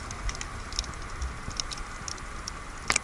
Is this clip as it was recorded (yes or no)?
yes